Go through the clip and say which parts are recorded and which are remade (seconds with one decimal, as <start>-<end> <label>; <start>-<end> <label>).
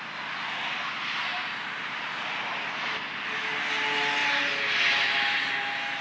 0.0-1.3 recorded; 1.3-2.1 remade; 2.1-4.2 recorded; 4.2-5.4 remade; 5.4-6.0 recorded